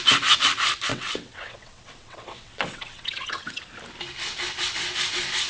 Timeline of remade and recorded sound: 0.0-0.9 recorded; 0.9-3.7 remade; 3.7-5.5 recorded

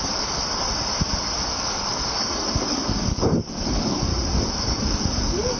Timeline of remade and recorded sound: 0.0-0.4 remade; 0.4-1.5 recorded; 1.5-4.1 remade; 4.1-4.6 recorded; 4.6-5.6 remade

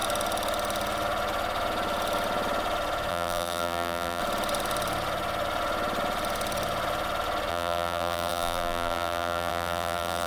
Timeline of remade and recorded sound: 0.0-3.1 recorded; 3.1-4.2 remade; 4.2-7.5 recorded; 7.5-10.3 remade

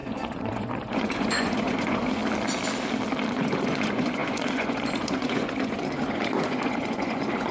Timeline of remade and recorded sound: 0.0-2.2 remade; 2.2-3.3 recorded; 3.3-7.5 remade

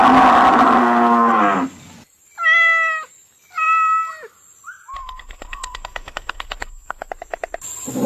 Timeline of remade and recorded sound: 0.0-0.8 recorded; 0.8-1.4 remade; 1.4-5.0 recorded; 5.0-7.1 remade; 7.1-8.1 recorded

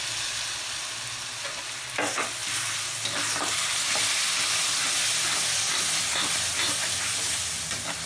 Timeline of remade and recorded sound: 0.0-8.1 recorded

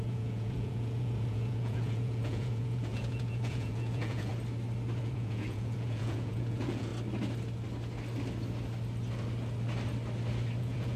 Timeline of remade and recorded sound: 0.0-4.3 remade; 4.3-5.0 recorded; 5.0-6.9 remade; 6.9-10.6 recorded; 10.6-11.0 remade